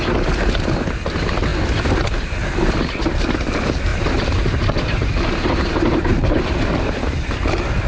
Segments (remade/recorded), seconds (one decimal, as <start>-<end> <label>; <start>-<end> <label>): 0.0-3.9 recorded; 3.9-6.5 remade; 6.5-7.9 recorded